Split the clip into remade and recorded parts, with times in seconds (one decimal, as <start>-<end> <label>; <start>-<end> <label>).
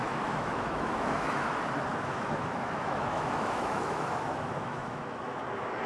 0.0-1.5 remade; 1.5-1.9 recorded; 1.9-5.4 remade; 5.4-5.9 recorded